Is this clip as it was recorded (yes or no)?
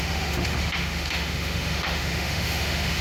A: no